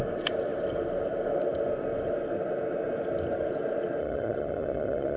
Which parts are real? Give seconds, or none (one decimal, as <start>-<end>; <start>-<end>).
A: 0.0-4.0